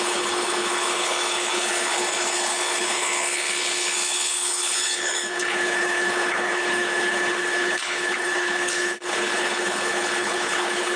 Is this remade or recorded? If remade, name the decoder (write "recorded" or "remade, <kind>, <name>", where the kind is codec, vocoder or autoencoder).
remade, codec, HILCodec